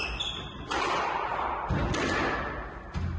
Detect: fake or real real